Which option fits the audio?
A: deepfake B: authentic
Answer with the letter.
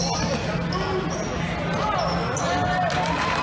B